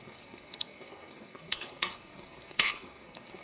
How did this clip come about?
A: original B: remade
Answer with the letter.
B